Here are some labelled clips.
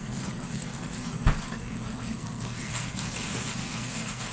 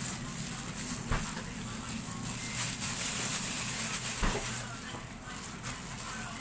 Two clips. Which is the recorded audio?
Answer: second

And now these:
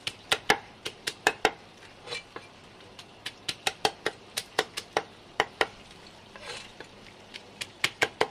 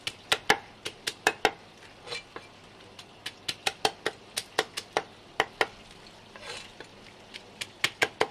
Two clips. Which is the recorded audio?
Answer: second